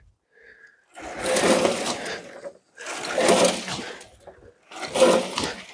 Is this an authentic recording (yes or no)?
yes